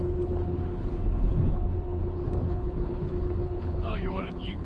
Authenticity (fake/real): fake